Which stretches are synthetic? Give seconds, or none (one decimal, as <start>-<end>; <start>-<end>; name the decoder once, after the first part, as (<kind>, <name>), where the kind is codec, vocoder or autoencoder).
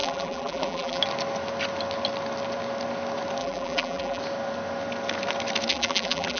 0.0-1.0 (vocoder, BigVGAN v2); 3.4-4.2; 5.7-6.4